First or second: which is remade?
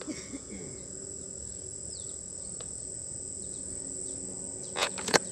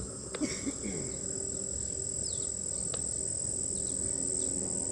first